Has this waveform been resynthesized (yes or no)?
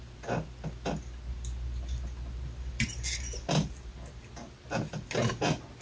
no